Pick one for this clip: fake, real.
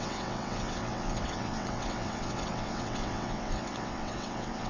fake